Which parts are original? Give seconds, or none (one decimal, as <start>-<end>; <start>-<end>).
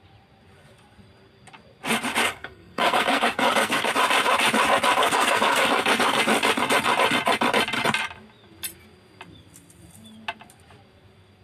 0.0-2.2; 3.9-5.0; 6.2-11.4